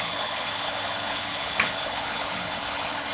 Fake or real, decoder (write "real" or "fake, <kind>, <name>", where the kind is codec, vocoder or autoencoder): fake, codec, HILCodec